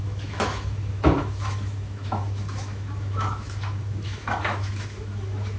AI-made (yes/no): yes